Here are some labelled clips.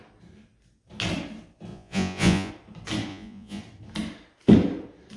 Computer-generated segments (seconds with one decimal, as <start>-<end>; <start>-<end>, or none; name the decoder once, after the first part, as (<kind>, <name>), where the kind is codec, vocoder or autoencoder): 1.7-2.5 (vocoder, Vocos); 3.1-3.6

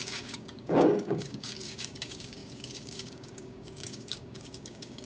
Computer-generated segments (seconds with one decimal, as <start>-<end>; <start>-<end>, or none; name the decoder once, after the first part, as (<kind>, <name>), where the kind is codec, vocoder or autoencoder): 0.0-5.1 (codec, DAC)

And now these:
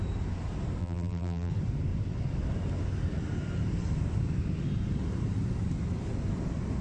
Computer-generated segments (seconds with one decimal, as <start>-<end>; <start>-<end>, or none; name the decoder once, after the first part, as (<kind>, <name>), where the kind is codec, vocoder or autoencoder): 0.8-1.5 (vocoder, BigVGAN v2)